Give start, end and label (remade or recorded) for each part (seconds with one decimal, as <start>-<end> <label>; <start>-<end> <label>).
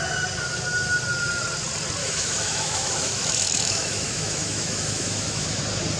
0.0-2.0 recorded; 2.0-5.6 remade; 5.6-6.0 recorded